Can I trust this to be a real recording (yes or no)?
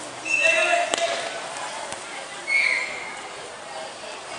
yes